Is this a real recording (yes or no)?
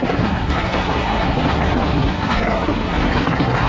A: no